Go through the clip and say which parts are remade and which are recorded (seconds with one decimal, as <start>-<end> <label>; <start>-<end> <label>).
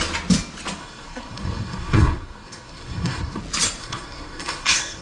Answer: 0.0-0.8 recorded; 0.8-3.4 remade; 3.4-3.8 recorded; 3.8-5.0 remade